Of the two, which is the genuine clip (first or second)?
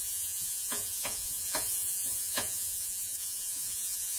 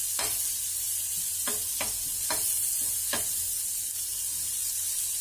second